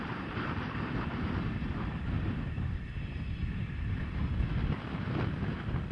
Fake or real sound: real